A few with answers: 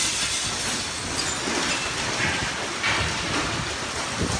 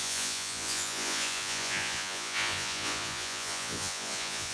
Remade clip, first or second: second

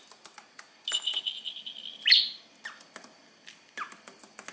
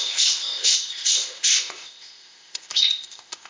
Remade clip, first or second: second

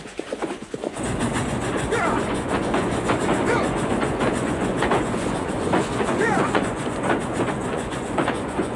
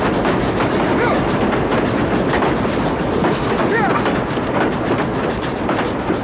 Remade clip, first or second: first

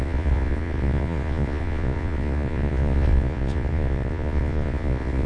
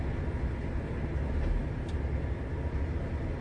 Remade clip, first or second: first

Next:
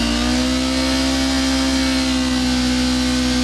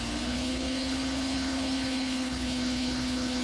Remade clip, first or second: second